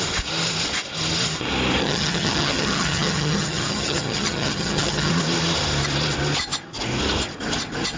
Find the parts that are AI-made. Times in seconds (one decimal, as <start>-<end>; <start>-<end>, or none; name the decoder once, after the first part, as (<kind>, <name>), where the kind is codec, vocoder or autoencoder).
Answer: 1.8-5.1 (vocoder, HiFi-GAN)